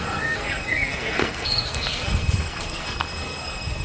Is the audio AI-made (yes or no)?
yes